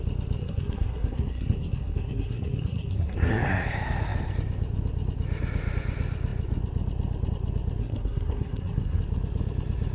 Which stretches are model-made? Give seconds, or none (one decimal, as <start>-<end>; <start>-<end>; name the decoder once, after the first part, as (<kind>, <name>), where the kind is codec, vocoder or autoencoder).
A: 0.4-3.3 (codec, SNAC); 7.8-9.0